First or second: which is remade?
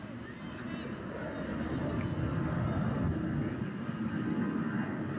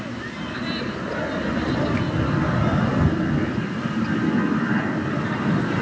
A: second